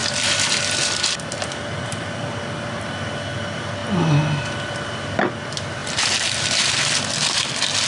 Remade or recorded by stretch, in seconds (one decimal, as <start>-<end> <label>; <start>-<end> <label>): 0.0-1.5 remade; 1.5-5.8 recorded; 5.8-6.7 remade; 6.7-7.9 recorded